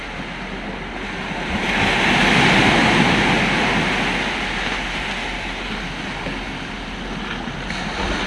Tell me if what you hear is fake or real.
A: real